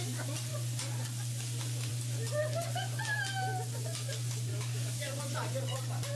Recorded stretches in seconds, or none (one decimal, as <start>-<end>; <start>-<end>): 0.0-4.5; 5.2-6.2